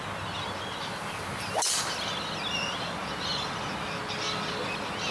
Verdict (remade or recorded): recorded